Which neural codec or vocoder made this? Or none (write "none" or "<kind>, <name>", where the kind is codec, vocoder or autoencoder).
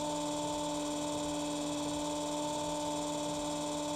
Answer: none